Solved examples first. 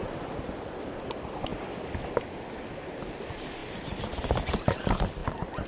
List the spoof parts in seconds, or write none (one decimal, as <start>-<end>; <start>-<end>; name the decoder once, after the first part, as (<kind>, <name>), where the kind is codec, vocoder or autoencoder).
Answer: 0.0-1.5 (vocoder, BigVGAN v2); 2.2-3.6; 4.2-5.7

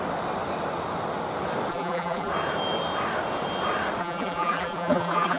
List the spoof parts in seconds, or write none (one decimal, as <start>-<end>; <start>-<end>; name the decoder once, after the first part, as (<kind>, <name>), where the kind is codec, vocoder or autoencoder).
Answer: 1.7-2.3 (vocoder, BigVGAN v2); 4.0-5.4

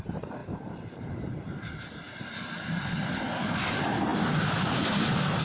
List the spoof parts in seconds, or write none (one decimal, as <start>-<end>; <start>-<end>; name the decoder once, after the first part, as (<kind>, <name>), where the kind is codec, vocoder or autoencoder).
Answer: 0.0-5.4 (vocoder, BigVGAN v2)

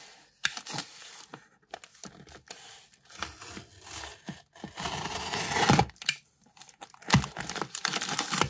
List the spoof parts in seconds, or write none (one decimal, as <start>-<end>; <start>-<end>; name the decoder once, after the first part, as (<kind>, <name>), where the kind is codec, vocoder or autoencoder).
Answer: none